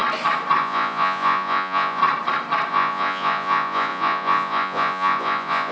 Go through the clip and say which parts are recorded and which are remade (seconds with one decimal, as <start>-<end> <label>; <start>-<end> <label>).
0.0-0.6 recorded; 0.6-2.0 remade; 2.0-2.7 recorded; 2.7-5.7 remade